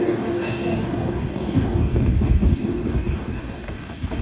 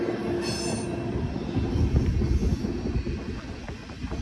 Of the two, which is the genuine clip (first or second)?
second